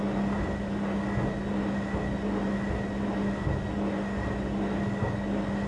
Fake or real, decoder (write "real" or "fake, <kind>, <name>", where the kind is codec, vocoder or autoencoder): real